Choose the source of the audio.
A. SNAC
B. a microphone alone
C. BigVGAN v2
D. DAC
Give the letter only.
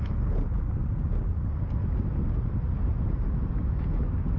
B